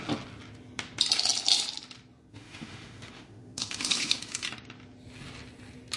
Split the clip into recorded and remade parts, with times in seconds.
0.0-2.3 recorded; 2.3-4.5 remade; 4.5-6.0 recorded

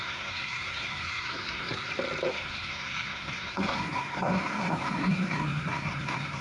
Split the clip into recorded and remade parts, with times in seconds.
0.0-1.9 remade; 1.9-2.3 recorded; 2.3-6.4 remade

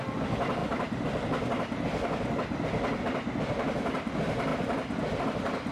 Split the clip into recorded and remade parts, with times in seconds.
0.0-5.7 recorded

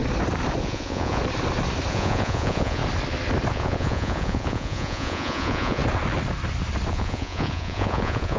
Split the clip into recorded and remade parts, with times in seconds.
0.0-0.6 recorded; 0.6-1.2 remade; 1.2-1.9 recorded; 1.9-2.8 remade; 2.8-3.5 recorded; 3.5-5.8 remade; 5.8-6.9 recorded; 6.9-8.4 remade

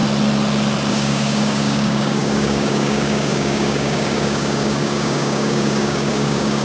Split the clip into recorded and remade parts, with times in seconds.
0.0-0.9 recorded; 0.9-6.6 remade